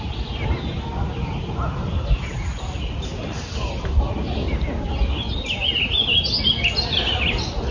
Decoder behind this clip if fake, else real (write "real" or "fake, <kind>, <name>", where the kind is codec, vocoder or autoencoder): real